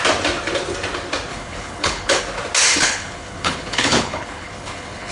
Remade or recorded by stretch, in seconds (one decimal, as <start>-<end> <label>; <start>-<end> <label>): 0.0-1.3 recorded; 1.3-2.2 remade; 2.2-2.7 recorded; 2.7-5.1 remade